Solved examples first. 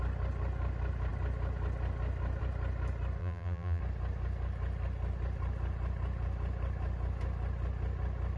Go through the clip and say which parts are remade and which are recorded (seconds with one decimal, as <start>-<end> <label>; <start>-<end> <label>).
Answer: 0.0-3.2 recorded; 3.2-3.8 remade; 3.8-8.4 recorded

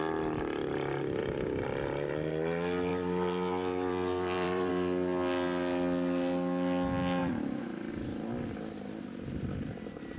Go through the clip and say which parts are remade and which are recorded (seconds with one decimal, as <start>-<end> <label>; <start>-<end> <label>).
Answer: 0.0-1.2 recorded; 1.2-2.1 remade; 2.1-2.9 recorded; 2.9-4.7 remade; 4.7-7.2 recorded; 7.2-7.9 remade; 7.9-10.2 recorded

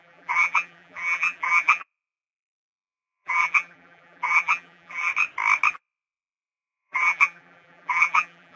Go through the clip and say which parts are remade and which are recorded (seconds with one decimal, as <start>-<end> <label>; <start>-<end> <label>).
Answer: 0.0-5.1 remade; 5.1-5.7 recorded; 5.7-8.6 remade

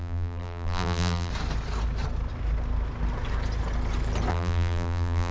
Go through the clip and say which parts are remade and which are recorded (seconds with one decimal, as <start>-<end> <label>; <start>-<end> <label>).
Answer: 0.0-1.3 remade; 1.3-4.3 recorded; 4.3-5.3 remade

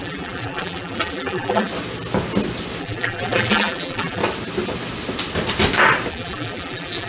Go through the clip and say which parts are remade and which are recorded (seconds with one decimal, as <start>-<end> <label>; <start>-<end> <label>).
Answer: 0.0-1.7 remade; 1.7-2.8 recorded; 2.8-4.2 remade; 4.2-6.1 recorded; 6.1-7.1 remade

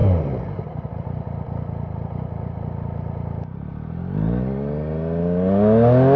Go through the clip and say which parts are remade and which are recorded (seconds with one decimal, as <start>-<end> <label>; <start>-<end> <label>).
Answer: 0.0-6.2 recorded